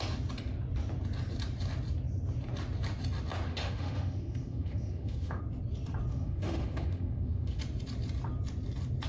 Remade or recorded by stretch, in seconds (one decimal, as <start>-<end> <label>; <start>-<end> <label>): 0.0-3.5 recorded; 3.5-5.4 remade; 5.4-6.1 recorded; 6.1-7.6 remade; 7.6-9.1 recorded